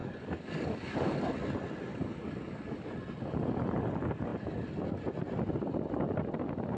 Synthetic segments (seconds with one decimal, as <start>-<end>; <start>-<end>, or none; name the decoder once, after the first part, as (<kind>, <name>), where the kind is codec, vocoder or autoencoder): 0.0-1.3 (codec, DAC); 1.9-2.9